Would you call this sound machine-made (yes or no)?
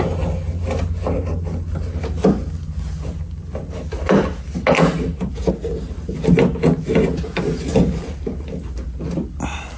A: no